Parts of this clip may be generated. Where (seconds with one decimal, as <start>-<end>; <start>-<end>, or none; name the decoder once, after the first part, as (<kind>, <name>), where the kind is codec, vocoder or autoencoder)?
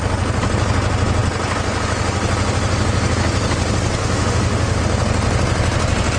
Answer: 4.0-4.8 (autoencoder, DAC-VAE)